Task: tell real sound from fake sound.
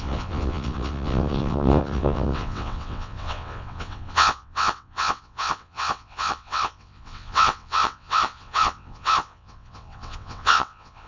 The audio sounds fake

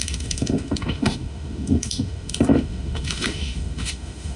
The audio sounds fake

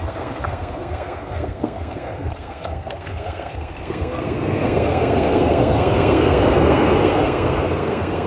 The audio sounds fake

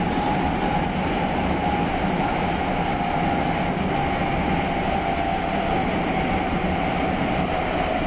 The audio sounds real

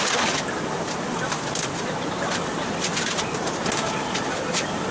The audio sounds real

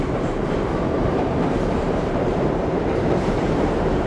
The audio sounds fake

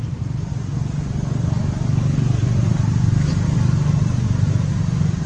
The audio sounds real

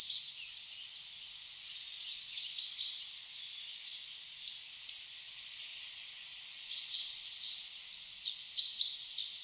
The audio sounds real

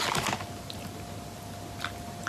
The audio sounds real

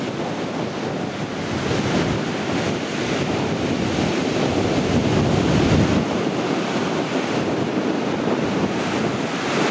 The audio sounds real